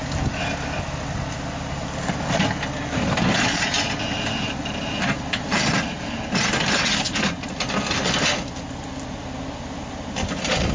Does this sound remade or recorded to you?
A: recorded